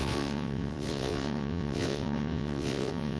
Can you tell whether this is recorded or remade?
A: remade